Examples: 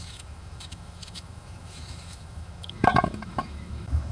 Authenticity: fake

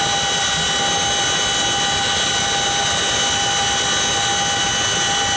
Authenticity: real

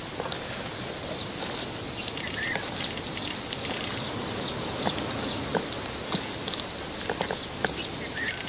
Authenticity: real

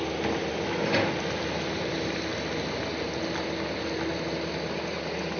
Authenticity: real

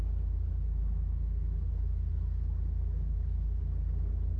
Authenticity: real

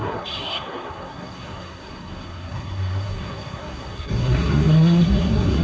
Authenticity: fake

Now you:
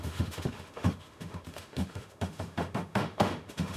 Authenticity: fake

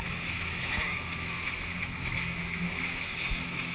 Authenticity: fake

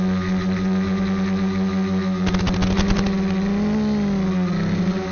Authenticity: real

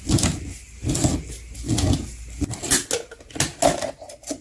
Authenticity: real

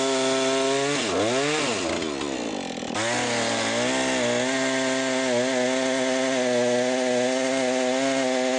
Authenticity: real